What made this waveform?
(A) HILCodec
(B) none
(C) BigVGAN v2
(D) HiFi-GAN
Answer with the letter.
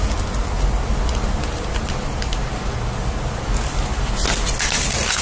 B